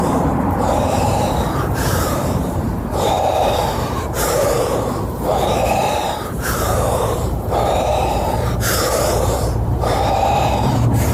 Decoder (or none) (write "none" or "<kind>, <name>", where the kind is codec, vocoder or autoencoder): vocoder, BigVGAN v2